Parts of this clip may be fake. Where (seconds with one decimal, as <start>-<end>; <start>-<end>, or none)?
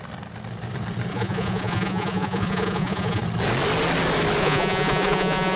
1.1-3.2; 4.4-5.6